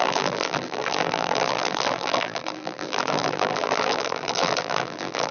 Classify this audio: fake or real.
fake